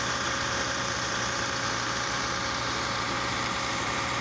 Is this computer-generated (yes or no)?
yes